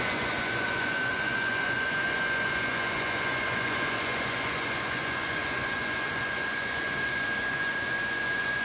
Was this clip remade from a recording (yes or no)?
yes